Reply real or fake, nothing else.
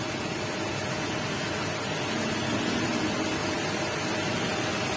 real